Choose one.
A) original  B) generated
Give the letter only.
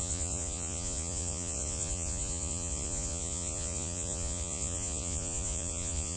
B